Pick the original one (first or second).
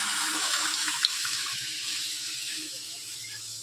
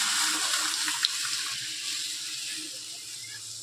second